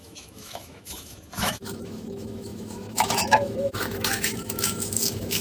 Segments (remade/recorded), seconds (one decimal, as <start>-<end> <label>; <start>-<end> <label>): 0.0-5.4 remade